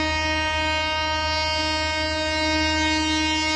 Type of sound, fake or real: real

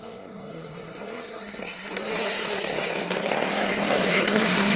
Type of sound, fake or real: fake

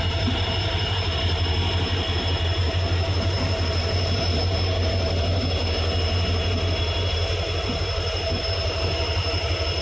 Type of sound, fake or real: fake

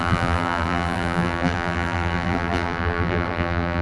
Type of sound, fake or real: fake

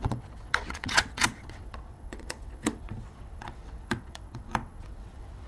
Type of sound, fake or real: fake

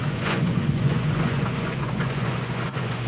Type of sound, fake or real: fake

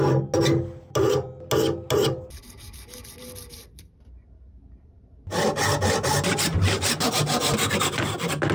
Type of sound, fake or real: real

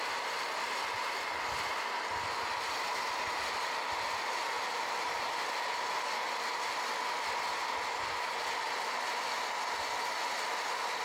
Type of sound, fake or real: real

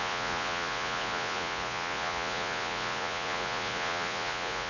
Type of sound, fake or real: fake